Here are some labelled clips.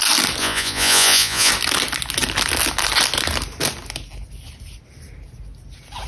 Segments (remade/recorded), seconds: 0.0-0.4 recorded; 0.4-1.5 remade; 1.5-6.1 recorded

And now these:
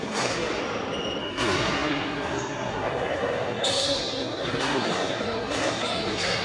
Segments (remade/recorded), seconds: 0.0-0.6 remade; 0.6-1.2 recorded; 1.2-6.4 remade

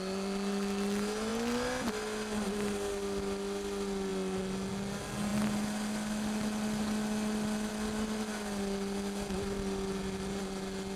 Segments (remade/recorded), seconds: 0.0-11.0 recorded